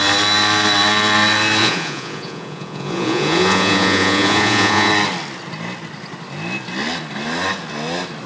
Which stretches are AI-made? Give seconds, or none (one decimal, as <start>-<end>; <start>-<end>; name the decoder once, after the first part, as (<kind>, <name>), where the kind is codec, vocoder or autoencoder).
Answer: 1.6-4.9 (vocoder, Vocos)